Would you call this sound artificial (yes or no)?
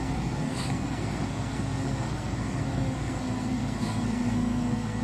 yes